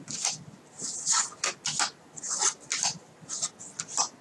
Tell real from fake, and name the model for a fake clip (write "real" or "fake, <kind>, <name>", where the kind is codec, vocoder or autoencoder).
real